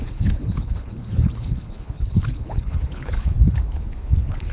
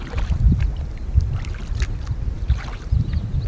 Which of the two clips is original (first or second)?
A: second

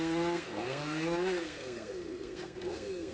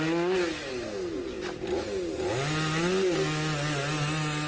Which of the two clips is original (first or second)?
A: second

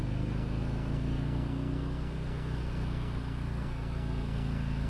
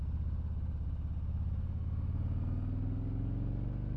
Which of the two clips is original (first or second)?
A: second